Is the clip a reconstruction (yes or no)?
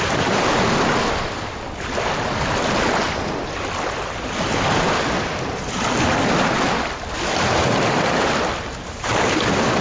no